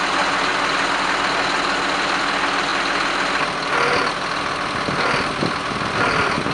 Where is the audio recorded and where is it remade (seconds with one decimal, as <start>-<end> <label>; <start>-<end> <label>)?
0.0-6.5 recorded